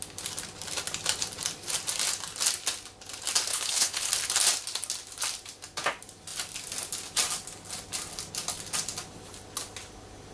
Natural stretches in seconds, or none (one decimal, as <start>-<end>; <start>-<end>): 0.0-3.5; 4.1-10.3